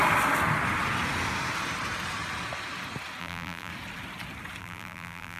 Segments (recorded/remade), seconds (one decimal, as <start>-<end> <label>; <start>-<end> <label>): 0.0-3.2 recorded; 3.2-3.7 remade; 3.7-4.6 recorded; 4.6-5.4 remade

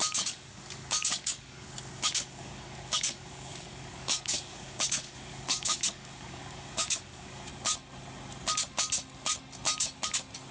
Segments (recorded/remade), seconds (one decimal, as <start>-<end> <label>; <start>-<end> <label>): 0.0-7.5 remade; 7.5-10.5 recorded

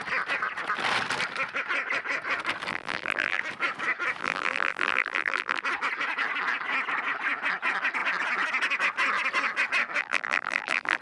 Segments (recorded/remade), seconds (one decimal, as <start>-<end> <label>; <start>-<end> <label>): 0.0-2.7 recorded; 2.7-3.4 remade; 3.4-4.2 recorded; 4.2-5.6 remade; 5.6-10.0 recorded; 10.0-11.0 remade